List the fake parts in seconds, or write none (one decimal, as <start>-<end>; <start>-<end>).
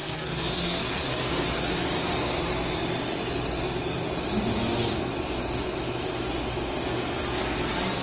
0.0-1.3